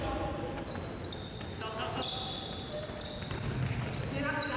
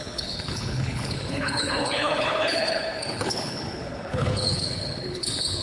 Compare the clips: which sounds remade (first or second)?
second